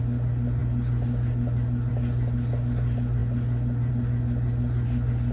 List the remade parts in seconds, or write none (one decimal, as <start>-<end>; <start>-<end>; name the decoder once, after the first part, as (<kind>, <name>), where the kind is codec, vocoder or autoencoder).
none